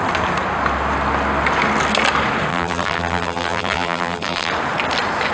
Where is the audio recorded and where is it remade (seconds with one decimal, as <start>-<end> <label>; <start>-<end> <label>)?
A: 0.0-2.5 recorded; 2.5-4.5 remade; 4.5-5.3 recorded